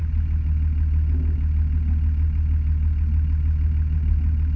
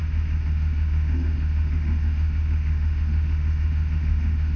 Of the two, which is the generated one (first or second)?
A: second